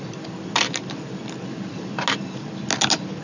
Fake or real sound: real